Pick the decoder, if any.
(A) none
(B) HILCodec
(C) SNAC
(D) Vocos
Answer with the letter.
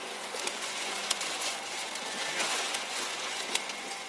D